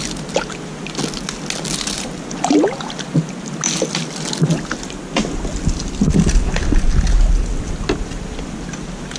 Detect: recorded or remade recorded